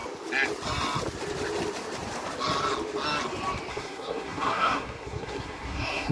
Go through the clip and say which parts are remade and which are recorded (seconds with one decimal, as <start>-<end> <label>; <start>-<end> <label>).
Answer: 0.0-3.7 recorded; 3.7-6.1 remade